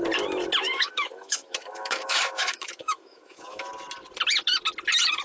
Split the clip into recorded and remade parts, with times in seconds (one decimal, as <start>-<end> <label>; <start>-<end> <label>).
0.0-0.6 recorded; 0.6-3.7 remade; 3.7-5.2 recorded